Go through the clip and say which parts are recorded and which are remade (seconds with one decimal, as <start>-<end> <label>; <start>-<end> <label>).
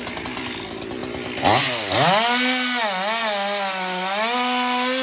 0.0-5.0 recorded